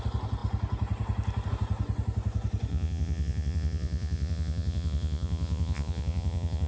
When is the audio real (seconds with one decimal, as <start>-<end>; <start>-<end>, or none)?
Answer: 0.0-2.7